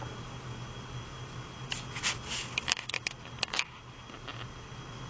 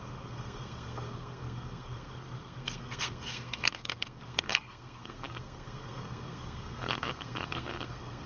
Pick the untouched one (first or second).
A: first